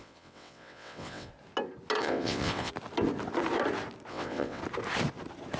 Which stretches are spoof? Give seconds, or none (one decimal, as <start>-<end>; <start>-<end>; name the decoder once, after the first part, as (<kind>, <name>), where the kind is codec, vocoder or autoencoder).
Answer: 0.0-1.3 (vocoder, WaveNeXt); 2.0-2.7; 4.1-4.6